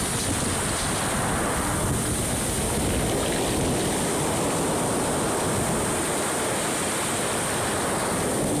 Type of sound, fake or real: real